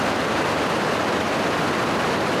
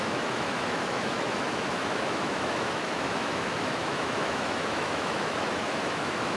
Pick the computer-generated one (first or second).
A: second